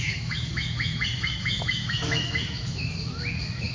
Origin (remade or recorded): remade